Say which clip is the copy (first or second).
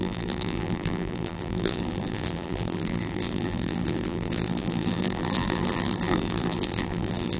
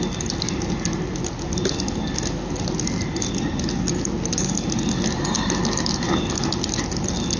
first